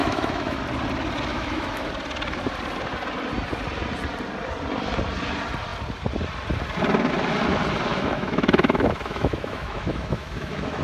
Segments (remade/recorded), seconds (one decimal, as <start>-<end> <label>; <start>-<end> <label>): 0.0-0.6 remade; 0.6-1.3 recorded; 1.3-1.9 remade; 1.9-7.9 recorded; 7.9-10.8 remade